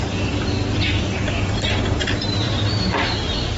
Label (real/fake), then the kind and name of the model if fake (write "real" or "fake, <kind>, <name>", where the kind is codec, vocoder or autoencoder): real